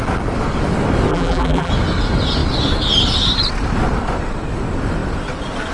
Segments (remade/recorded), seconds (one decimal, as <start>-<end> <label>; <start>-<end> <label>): 0.0-1.1 recorded; 1.1-1.7 remade; 1.7-5.7 recorded